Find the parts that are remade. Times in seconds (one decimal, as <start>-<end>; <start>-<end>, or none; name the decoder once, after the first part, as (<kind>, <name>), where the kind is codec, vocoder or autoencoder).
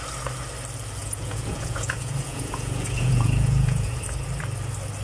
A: 1.0-4.0 (vocoder, Vocos)